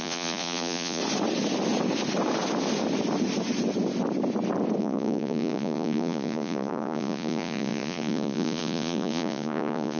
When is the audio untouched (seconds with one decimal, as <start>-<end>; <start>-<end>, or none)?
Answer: 1.0-4.8